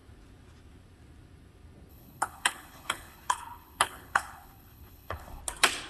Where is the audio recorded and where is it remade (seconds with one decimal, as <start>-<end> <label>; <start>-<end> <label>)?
0.0-1.9 recorded; 1.9-5.4 remade; 5.4-5.9 recorded